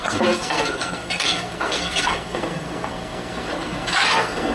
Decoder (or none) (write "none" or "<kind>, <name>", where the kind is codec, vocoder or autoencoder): codec, SNAC